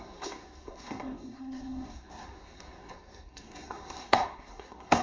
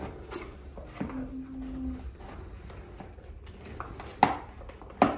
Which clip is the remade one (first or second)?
first